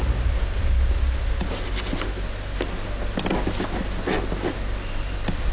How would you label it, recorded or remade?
recorded